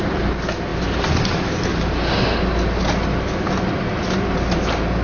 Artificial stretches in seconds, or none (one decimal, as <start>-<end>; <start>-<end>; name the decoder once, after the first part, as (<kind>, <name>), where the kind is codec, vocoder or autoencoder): none